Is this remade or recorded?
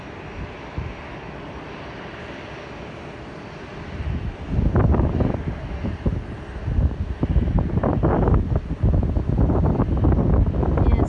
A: recorded